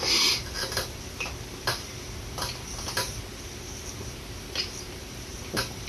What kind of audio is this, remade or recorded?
remade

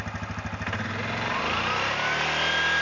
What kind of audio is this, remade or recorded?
recorded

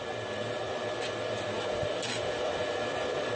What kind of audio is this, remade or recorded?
recorded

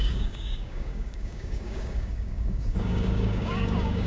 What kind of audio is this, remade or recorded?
remade